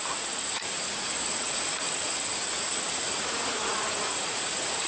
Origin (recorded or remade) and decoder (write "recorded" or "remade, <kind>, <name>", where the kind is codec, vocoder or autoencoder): remade, vocoder, Vocos